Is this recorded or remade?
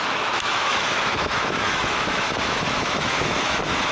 remade